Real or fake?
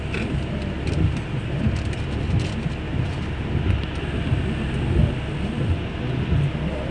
real